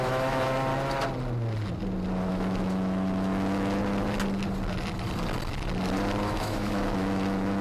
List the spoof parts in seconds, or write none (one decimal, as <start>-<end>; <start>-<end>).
0.0-0.7; 2.3-3.8; 6.3-7.6